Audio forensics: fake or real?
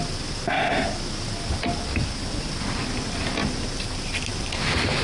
real